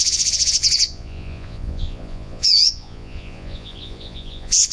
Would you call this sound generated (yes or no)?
yes